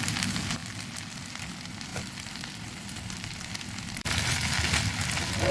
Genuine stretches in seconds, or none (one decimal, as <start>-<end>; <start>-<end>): 0.0-5.5